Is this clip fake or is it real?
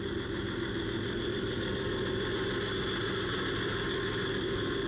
real